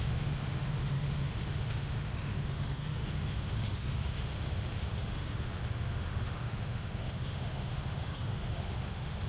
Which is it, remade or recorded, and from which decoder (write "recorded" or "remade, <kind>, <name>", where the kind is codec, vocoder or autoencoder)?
remade, autoencoder, DAC-VAE